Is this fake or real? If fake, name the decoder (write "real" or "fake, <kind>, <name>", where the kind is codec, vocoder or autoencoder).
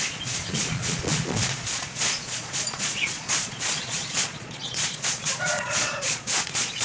fake, vocoder, Vocos